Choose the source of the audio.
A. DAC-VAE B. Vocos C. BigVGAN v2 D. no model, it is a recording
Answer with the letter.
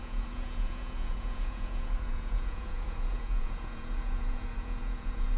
B